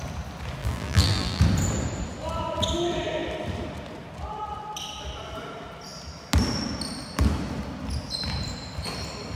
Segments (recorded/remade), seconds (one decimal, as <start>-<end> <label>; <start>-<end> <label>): 0.0-0.6 recorded; 0.6-1.4 remade; 1.4-9.3 recorded

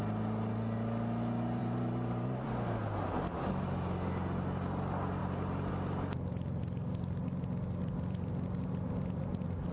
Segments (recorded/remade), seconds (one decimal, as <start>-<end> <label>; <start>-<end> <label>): 0.0-1.6 recorded; 1.6-2.5 remade; 2.5-9.7 recorded